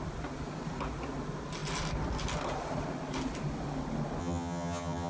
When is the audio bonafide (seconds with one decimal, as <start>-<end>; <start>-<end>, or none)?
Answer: 0.0-4.2